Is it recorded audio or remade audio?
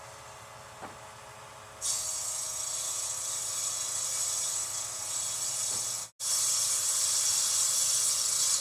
recorded